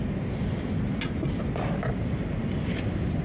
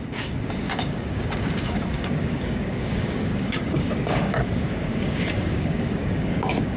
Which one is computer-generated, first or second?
second